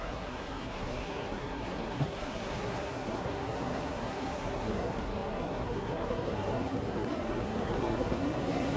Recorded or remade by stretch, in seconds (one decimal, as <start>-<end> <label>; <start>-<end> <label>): 0.0-8.8 remade